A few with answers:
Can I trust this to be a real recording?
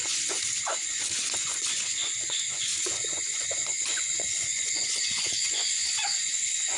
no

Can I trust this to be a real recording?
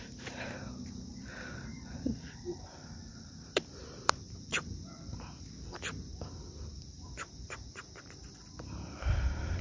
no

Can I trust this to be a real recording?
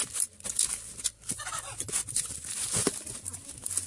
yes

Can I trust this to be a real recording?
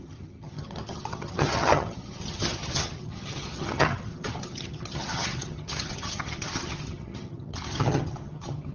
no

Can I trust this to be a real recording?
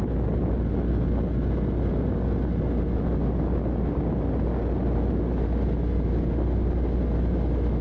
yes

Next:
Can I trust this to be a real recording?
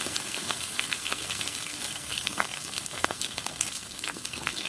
no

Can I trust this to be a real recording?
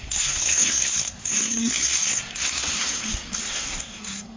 no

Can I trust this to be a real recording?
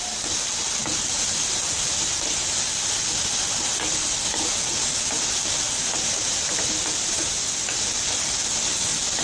yes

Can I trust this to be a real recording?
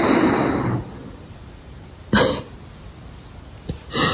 yes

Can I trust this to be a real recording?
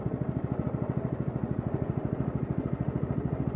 no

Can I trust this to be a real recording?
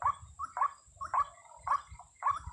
no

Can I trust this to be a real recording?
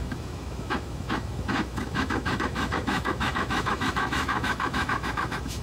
no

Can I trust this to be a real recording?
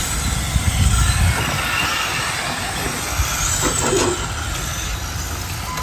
yes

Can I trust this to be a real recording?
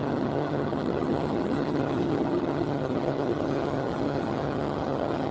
no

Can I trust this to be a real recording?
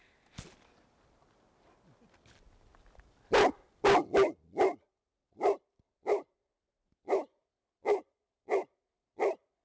yes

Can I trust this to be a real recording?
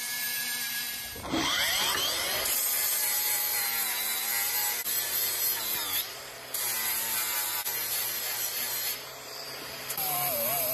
no